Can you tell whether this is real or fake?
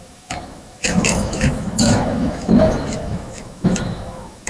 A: fake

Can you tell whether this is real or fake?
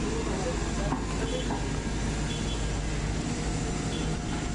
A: real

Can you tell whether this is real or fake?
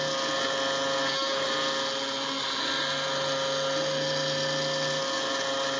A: real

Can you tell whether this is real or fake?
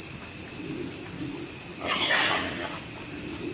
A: real